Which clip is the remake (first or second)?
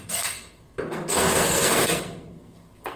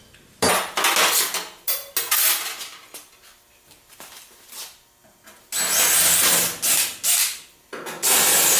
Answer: first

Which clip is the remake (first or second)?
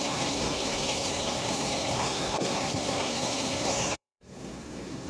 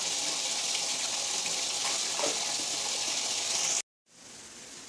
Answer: first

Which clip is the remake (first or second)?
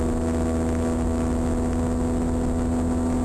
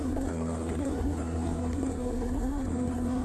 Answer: second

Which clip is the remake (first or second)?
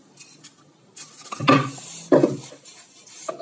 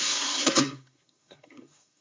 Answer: second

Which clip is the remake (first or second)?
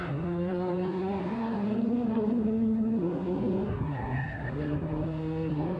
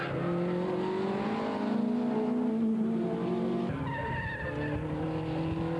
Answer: first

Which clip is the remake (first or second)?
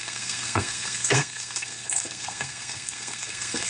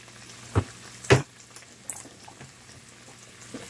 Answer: first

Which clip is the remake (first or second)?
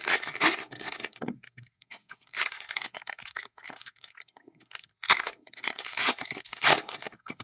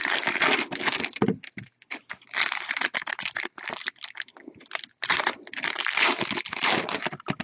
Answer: first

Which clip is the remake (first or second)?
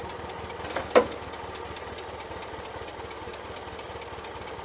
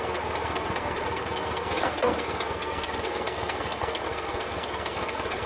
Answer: second